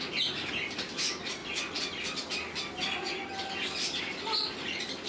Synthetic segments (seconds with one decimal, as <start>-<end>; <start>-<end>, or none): none